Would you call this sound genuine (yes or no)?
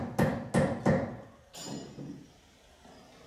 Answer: yes